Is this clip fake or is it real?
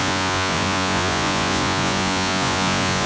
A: fake